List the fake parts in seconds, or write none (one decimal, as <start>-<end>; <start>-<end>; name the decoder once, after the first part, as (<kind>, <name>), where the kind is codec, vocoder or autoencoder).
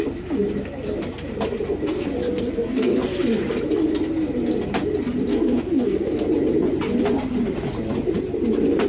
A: 2.3-3.0 (codec, SNAC); 5.3-6.2